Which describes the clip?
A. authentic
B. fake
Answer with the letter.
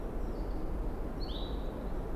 A